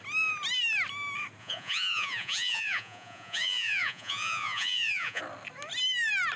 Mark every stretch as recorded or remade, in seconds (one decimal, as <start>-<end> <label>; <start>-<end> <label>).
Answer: 0.0-1.4 recorded; 1.4-5.2 remade; 5.2-6.4 recorded